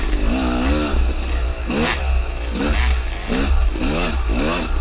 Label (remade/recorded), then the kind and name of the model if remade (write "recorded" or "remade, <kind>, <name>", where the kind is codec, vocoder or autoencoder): recorded